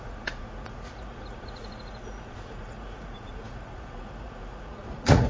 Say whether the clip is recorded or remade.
remade